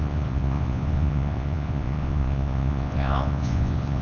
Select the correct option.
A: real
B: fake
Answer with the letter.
B